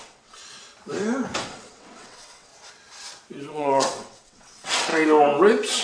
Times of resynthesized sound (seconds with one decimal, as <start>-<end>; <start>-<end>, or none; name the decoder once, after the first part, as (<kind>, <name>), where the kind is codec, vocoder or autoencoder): 0.0-0.4 (vocoder, WaveNeXt); 1.4-2.5; 3.5-4.9